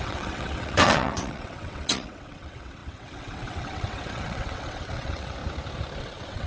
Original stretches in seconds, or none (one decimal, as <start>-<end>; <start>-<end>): 5.4-6.0